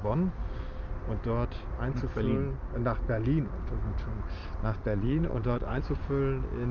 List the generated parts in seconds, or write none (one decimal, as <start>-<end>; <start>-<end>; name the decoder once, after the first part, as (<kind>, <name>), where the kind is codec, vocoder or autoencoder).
4.4-5.8 (vocoder, WaveNeXt)